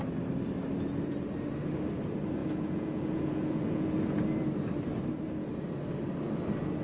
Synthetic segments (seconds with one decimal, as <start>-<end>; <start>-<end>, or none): 2.4-4.2